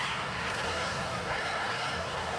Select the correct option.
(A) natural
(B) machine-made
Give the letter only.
B